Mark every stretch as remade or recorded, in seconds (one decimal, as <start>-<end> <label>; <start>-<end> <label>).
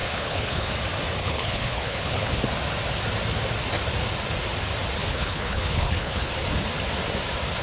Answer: 0.0-0.7 remade; 0.7-1.2 recorded; 1.2-2.4 remade; 2.4-5.0 recorded; 5.0-6.3 remade; 6.3-7.6 recorded